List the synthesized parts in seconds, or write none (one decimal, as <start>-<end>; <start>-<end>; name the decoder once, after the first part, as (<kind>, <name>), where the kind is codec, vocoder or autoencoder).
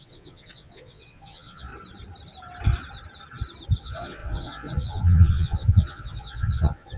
0.0-1.7 (vocoder, Vocos); 3.8-7.0